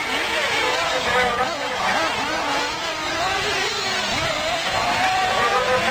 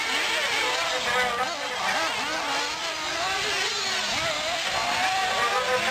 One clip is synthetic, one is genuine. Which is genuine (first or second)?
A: second